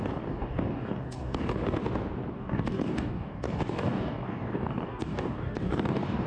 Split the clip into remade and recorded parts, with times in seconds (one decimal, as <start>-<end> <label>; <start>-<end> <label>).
0.0-1.8 remade; 1.8-2.3 recorded; 2.3-6.3 remade